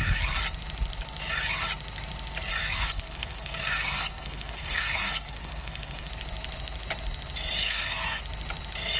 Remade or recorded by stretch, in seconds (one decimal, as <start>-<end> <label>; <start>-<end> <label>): 0.0-2.6 recorded; 2.6-6.1 remade; 6.1-7.6 recorded; 7.6-8.2 remade; 8.2-9.0 recorded